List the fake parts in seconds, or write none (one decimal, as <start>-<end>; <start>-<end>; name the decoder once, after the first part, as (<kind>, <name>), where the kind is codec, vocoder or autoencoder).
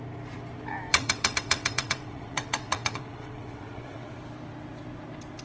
0.9-4.1 (vocoder, WaveNeXt)